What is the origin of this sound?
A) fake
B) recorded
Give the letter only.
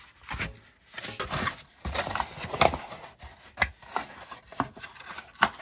B